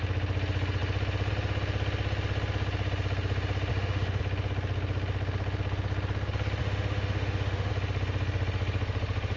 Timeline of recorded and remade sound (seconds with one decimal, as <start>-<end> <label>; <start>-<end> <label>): 0.0-3.7 recorded; 3.7-4.2 remade; 4.2-6.6 recorded; 6.6-7.7 remade; 7.7-9.4 recorded